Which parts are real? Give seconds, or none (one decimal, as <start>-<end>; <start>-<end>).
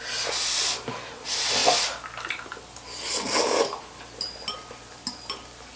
0.0-5.8